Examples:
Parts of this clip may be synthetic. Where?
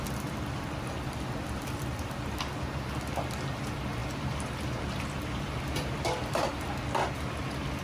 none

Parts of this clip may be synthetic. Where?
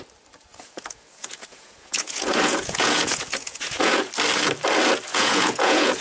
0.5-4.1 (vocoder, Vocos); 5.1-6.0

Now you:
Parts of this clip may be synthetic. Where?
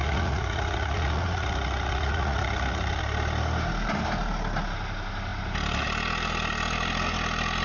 0.0-3.0 (vocoder, Vocos)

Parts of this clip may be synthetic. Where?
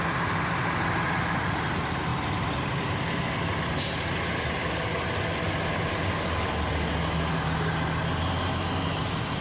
none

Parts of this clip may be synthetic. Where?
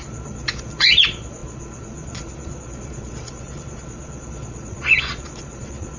0.0-6.0 (vocoder, Vocos)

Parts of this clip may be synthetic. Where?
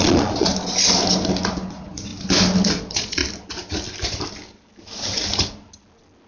0.0-0.5 (vocoder, Vocos); 1.7-2.1; 2.7-3.2